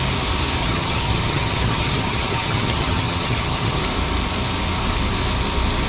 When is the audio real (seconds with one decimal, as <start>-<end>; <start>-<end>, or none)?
0.0-0.6; 3.8-5.9